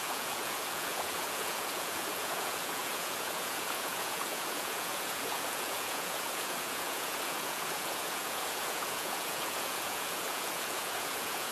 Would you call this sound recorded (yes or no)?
no